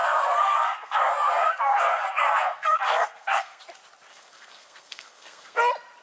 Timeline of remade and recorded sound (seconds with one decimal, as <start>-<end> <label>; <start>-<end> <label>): 0.0-3.6 remade; 3.6-4.1 recorded; 4.1-5.6 remade; 5.6-6.0 recorded